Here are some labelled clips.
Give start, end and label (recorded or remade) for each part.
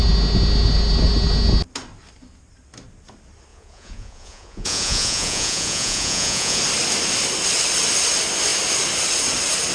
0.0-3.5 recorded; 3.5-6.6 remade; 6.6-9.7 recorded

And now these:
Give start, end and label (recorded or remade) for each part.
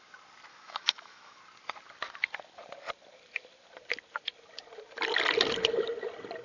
0.0-0.5 recorded; 0.5-1.4 remade; 1.4-6.4 recorded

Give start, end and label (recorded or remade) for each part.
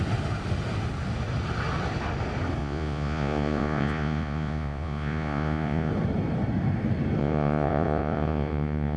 0.0-2.6 recorded; 2.6-5.9 remade; 5.9-7.2 recorded; 7.2-9.0 remade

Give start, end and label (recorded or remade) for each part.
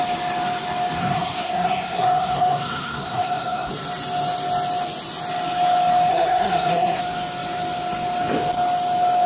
0.0-1.0 recorded; 1.0-3.7 remade; 3.7-6.1 recorded; 6.1-7.0 remade; 7.0-9.3 recorded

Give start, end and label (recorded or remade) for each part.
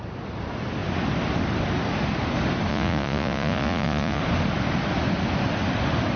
0.0-2.7 recorded; 2.7-4.2 remade; 4.2-6.2 recorded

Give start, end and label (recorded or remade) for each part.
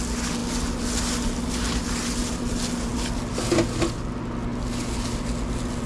0.0-5.9 recorded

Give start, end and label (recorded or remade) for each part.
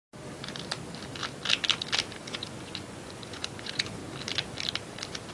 0.0-2.2 recorded; 2.2-4.0 remade; 4.0-5.3 recorded